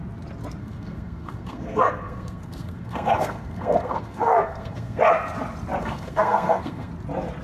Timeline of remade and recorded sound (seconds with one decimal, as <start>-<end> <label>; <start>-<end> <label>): 0.0-0.6 recorded; 0.6-5.0 remade; 5.0-5.8 recorded; 5.8-6.9 remade; 6.9-7.4 recorded